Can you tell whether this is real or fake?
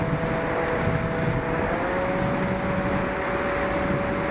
real